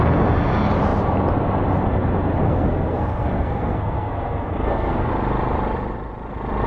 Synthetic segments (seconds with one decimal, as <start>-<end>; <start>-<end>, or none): 2.4-5.1